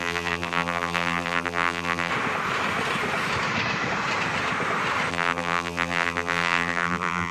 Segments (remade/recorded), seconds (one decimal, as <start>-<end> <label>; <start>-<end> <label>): 0.0-2.1 remade; 2.1-5.1 recorded; 5.1-7.3 remade